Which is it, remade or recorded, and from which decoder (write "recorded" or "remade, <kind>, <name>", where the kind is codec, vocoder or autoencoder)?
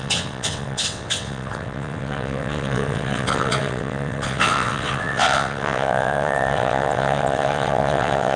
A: remade, vocoder, WaveNeXt